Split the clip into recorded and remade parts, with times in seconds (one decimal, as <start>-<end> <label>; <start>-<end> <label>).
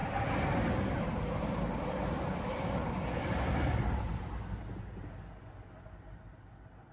0.0-6.9 recorded